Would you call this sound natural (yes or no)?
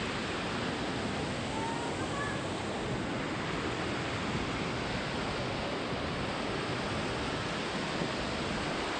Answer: yes